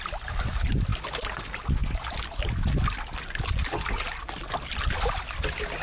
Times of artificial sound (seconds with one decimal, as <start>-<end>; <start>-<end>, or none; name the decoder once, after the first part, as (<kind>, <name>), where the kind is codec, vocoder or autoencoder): none